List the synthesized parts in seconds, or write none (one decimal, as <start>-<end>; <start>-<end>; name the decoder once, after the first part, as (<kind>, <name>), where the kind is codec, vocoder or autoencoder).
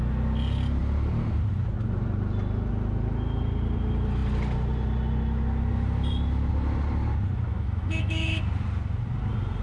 7.5-8.4 (autoencoder, DAC-VAE)